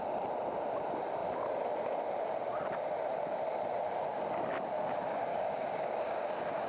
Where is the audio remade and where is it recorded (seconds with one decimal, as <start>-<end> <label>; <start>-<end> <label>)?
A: 0.0-5.3 recorded; 5.3-6.2 remade; 6.2-6.7 recorded